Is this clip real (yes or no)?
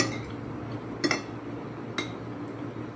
yes